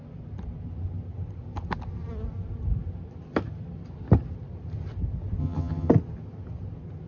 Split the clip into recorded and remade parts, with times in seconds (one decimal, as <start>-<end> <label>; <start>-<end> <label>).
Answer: 0.0-5.4 recorded; 5.4-5.9 remade; 5.9-7.1 recorded